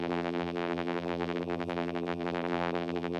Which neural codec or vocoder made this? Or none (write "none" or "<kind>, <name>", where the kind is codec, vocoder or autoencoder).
vocoder, BigVGAN v2